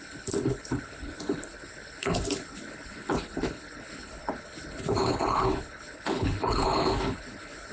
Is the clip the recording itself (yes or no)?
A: no